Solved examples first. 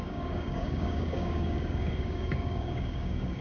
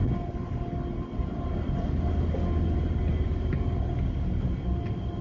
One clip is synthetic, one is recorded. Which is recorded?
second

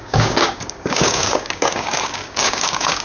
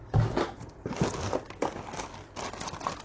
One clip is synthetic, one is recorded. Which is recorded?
second